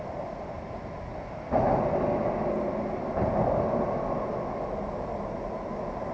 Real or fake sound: real